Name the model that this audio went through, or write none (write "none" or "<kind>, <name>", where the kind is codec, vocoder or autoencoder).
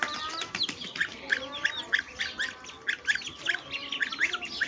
none